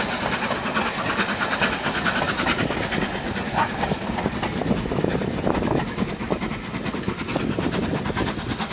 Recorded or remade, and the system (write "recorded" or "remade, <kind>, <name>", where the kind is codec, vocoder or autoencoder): recorded